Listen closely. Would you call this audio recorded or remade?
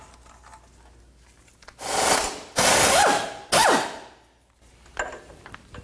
recorded